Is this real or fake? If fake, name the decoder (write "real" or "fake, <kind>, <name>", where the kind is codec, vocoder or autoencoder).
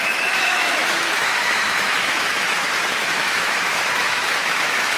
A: fake, autoencoder, DAC-VAE